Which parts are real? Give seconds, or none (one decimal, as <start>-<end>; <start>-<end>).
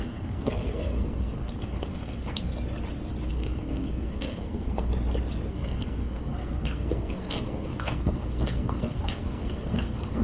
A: 2.5-3.3; 4.9-5.5